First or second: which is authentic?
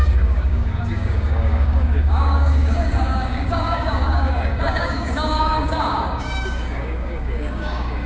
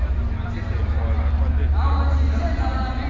second